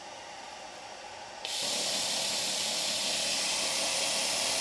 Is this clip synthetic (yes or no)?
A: yes